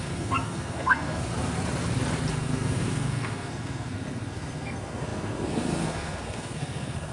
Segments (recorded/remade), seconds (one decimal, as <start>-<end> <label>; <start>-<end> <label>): 0.0-1.3 remade; 1.3-2.3 recorded; 2.3-7.1 remade